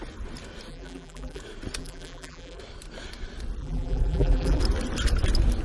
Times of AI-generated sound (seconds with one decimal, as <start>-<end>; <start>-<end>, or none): 0.7-1.4; 1.8-2.6; 3.6-4.6